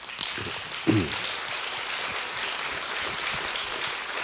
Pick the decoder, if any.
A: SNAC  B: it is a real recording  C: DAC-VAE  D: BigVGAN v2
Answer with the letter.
B